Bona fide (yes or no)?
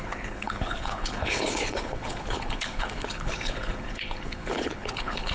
no